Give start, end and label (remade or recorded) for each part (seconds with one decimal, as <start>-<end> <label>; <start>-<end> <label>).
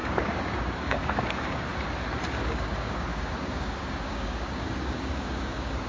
0.0-1.7 remade; 1.7-2.3 recorded; 2.3-5.9 remade